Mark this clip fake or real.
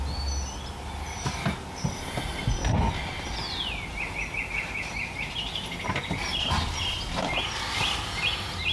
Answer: real